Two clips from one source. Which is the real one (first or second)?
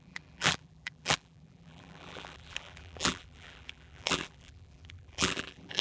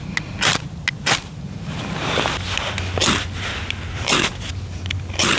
second